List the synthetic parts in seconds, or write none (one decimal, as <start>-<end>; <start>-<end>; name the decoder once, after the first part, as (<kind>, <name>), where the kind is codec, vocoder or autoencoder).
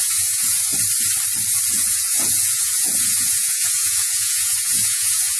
0.0-0.7 (vocoder, Vocos); 1.7-5.4